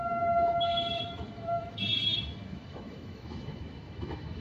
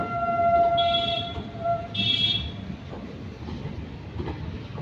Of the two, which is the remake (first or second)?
first